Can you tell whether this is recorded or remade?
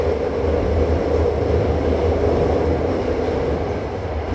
recorded